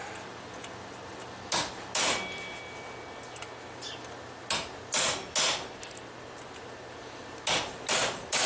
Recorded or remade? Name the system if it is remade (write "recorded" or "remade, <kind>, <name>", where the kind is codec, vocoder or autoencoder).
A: recorded